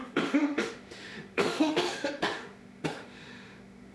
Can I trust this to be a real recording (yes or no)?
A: no